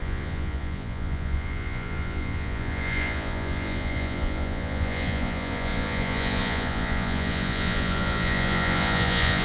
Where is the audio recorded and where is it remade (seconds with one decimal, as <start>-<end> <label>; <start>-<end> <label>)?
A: 0.0-9.4 remade